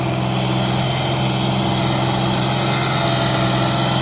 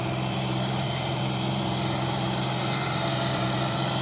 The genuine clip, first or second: first